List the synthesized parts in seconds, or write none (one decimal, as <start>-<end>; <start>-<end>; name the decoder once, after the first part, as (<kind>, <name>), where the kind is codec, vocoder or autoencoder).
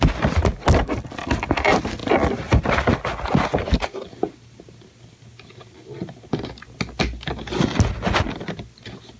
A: none